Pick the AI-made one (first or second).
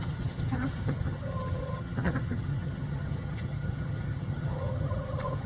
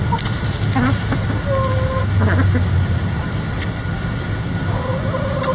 first